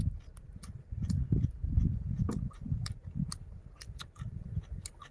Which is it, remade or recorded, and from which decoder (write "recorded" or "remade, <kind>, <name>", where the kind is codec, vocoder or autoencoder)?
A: recorded